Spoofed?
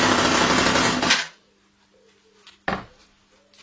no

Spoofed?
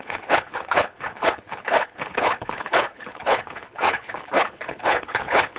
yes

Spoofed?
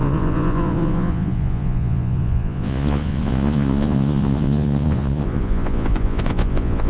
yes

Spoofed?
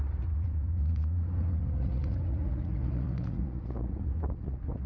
yes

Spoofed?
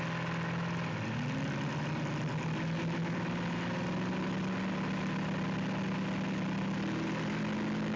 no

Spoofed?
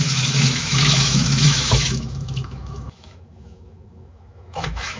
yes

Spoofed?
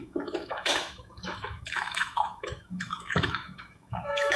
yes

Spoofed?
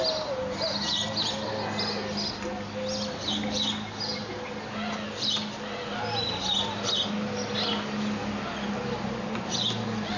no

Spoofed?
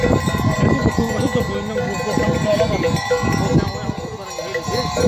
no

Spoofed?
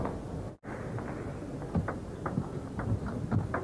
no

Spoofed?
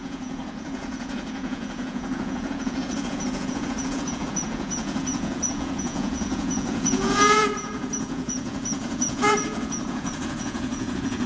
yes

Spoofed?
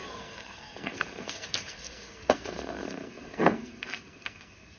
yes